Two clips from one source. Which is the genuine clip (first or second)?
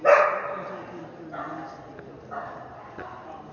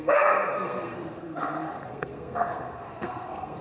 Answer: first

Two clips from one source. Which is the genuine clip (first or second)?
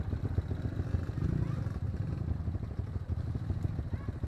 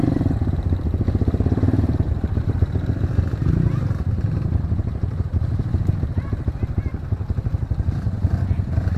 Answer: first